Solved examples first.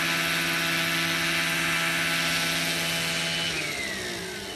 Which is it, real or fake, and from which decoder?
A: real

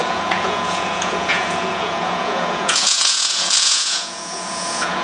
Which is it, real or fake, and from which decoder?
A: fake, vocoder, Vocos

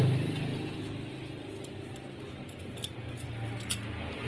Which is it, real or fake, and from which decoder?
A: real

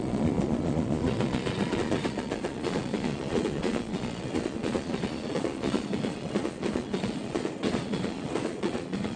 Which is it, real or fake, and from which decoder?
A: fake, vocoder, Vocos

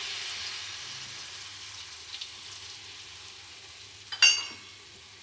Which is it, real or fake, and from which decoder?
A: real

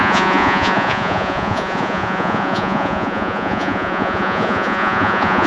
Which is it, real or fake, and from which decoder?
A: fake, vocoder, Vocos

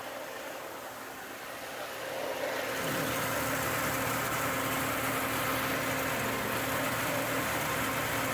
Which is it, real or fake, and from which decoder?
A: real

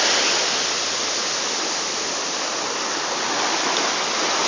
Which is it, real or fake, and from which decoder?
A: real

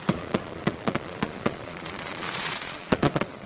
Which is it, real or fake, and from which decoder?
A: fake, vocoder, Vocos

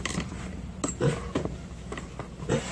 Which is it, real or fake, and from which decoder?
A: real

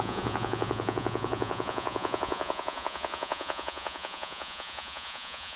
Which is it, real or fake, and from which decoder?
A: fake, vocoder, Vocos